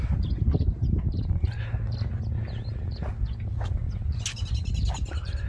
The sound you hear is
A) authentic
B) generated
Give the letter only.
A